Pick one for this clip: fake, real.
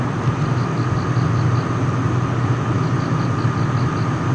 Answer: real